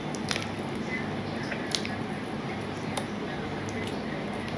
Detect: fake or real real